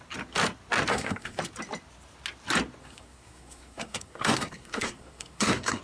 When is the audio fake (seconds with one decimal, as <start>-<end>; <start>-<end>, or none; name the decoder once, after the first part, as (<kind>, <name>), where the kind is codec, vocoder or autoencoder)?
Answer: 0.9-1.4 (codec, SNAC); 2.8-5.8